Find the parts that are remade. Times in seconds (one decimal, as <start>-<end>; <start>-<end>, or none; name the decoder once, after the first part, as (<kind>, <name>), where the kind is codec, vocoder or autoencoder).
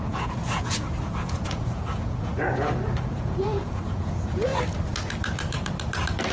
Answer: 0.0-2.3 (vocoder, Vocos); 3.1-4.5